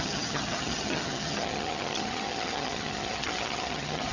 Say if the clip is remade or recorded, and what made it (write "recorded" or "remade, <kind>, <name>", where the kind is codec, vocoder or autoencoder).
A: remade, vocoder, HiFi-GAN